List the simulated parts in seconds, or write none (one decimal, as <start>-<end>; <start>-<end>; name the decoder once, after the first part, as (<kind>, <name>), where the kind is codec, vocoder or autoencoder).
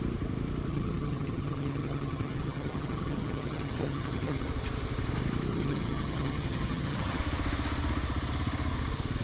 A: 0.7-4.5 (vocoder, HiFi-GAN); 5.5-7.2